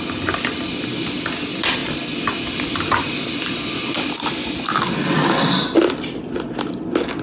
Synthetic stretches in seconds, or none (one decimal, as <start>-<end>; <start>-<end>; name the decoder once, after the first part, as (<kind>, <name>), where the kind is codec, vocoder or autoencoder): none